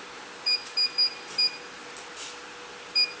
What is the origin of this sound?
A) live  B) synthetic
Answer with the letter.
A